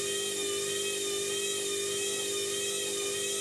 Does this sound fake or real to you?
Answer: real